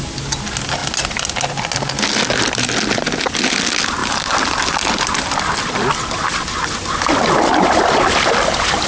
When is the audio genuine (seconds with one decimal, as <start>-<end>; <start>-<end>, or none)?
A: 0.0-8.9